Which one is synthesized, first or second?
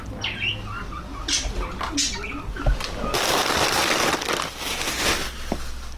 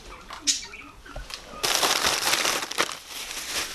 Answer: second